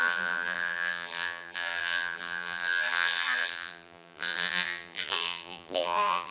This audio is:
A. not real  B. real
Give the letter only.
A